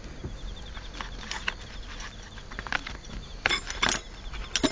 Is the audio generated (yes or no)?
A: no